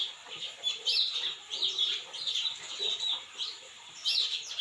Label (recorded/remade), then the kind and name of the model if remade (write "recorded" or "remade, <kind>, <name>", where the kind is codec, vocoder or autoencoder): remade, vocoder, BigVGAN v2